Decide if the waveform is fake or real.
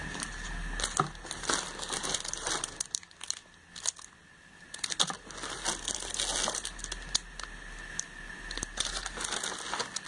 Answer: real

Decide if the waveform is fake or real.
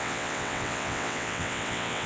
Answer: fake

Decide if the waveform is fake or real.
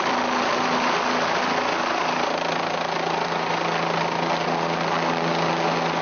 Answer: real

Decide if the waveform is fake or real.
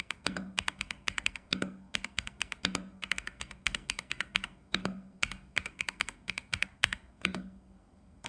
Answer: fake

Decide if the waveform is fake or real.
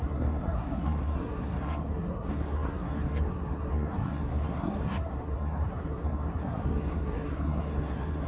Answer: fake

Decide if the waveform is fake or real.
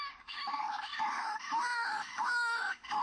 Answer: fake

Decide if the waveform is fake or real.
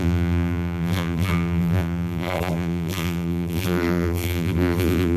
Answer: fake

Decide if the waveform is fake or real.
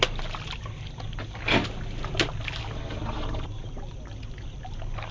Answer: real